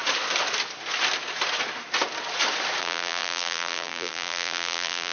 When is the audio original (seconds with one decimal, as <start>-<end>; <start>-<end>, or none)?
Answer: 0.0-2.8